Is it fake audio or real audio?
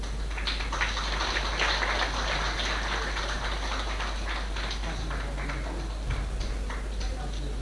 real